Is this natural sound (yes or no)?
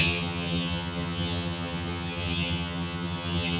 no